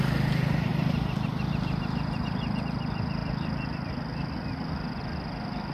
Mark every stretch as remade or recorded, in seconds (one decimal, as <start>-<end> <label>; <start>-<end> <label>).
0.0-5.7 recorded